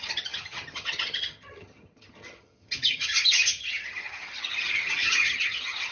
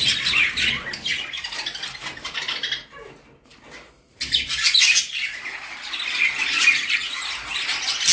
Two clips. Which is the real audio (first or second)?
second